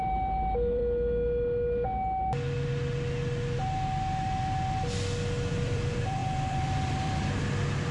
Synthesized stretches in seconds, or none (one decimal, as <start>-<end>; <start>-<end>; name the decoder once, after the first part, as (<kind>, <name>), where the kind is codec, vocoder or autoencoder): 0.0-0.8 (vocoder, BigVGAN v2); 5.5-7.9